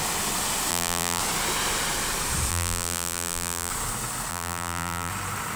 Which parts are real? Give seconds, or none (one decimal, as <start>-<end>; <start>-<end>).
0.0-0.7; 1.2-2.5; 3.7-4.3; 5.1-5.6